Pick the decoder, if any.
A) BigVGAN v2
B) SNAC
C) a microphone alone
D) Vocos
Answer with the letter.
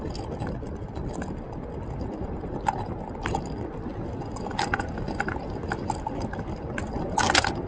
C